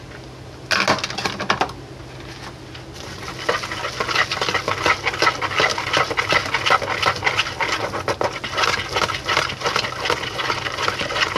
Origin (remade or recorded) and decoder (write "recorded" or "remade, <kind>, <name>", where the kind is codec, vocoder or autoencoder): recorded